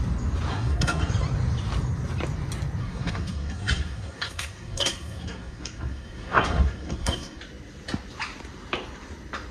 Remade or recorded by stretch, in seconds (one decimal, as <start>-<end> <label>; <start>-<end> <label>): 0.0-0.5 recorded; 0.5-1.1 remade; 1.1-2.8 recorded; 2.8-7.4 remade; 7.4-9.5 recorded